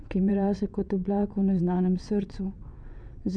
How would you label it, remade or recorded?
remade